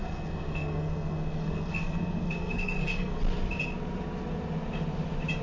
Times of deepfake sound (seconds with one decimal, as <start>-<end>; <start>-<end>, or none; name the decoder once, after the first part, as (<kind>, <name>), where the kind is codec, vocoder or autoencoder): 0.0-3.2 (codec, SNAC)